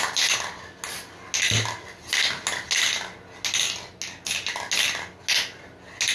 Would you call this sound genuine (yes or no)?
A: yes